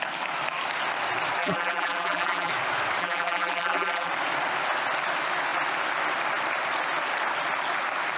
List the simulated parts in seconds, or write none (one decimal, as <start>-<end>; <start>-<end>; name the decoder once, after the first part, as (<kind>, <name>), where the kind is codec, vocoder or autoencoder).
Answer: 1.4-2.5 (vocoder, BigVGAN v2); 3.0-4.1

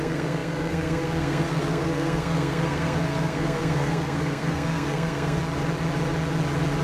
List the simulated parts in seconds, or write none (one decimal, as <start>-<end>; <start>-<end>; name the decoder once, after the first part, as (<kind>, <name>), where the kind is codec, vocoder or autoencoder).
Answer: 0.0-5.4 (codec, SNAC)

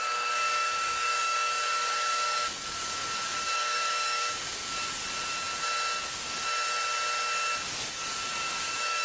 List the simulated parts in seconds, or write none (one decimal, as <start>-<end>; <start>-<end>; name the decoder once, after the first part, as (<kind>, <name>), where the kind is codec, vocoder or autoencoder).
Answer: 0.0-5.0 (codec, DAC); 7.9-9.0

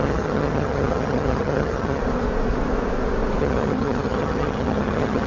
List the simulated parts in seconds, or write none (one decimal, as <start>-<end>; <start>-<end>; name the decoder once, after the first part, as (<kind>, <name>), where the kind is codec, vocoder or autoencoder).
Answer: 0.0-2.0 (vocoder, HiFi-GAN); 3.4-5.3